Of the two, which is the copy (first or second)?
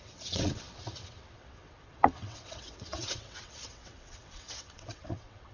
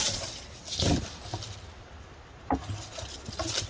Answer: first